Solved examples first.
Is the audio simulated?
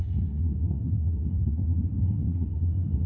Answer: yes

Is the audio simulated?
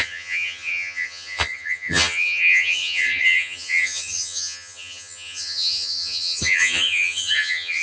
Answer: yes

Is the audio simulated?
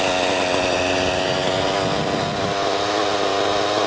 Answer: no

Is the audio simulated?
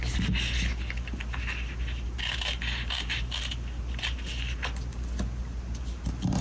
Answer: no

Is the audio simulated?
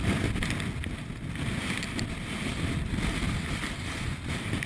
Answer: no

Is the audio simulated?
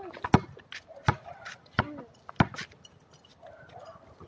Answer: no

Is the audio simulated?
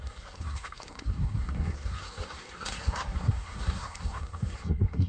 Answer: yes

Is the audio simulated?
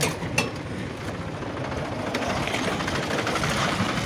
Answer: no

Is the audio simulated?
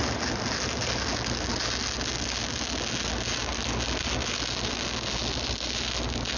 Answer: no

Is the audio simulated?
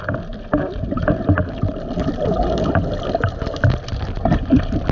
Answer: no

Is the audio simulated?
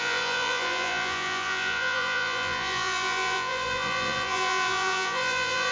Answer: yes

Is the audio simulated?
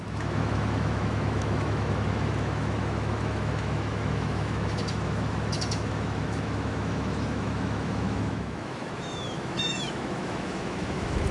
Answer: yes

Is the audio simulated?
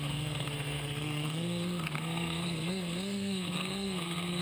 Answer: yes